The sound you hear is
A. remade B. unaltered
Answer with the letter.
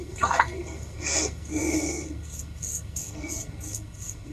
A